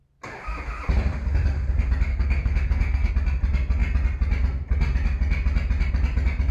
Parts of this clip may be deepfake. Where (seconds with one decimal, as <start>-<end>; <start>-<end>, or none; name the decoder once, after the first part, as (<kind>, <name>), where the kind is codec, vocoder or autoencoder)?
2.1-3.1 (codec, SNAC)